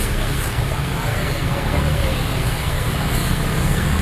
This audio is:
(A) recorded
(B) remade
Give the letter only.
B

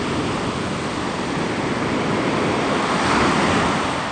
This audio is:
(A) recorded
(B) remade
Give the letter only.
A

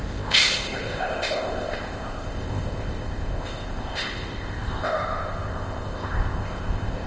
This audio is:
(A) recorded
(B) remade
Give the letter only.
B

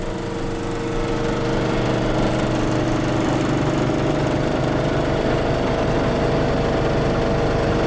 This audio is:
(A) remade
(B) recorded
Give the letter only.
B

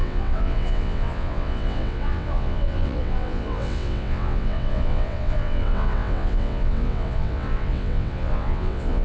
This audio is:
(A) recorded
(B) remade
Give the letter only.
B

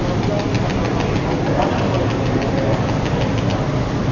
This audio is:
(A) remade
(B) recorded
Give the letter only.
B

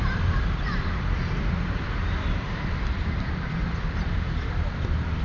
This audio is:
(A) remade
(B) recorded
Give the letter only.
A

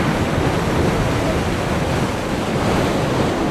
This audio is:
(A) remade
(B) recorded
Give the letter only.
B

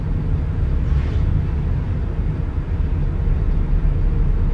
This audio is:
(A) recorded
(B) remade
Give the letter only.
A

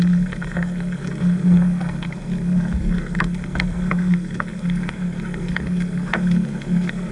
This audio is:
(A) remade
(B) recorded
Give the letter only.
A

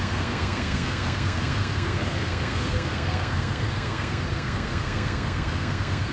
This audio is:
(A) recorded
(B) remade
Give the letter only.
B